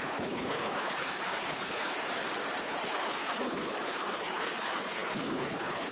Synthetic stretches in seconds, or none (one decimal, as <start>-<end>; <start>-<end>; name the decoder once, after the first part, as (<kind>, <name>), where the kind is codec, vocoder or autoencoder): 0.0-2.0 (codec, HILCodec); 2.6-5.9